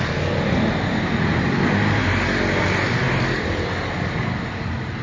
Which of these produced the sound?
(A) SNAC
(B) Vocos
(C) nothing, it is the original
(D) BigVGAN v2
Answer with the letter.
C